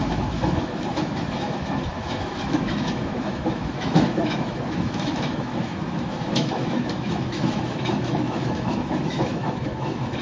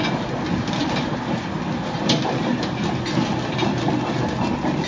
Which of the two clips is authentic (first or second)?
second